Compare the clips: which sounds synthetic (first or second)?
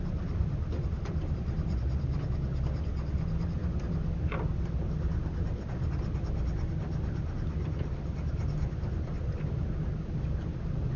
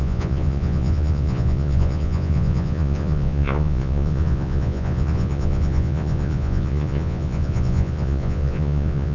second